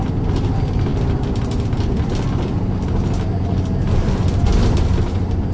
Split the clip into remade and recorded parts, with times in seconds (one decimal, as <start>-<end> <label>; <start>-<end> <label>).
0.0-5.5 recorded